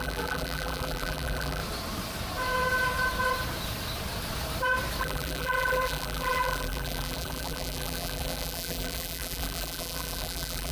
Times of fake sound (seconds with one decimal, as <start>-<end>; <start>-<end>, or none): 0.0-1.6; 5.0-10.7